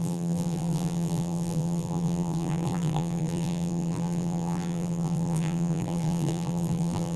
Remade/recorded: remade